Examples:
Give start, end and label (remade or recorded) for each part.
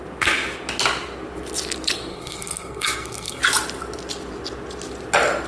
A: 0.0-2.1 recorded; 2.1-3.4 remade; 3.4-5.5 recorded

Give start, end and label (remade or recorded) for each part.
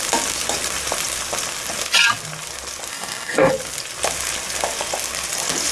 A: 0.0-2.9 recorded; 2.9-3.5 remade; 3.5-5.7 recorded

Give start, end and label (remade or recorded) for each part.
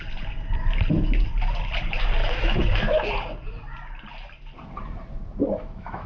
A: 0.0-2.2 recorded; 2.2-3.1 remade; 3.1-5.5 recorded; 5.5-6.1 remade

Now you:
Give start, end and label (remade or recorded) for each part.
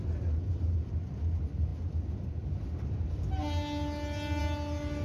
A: 0.0-5.0 recorded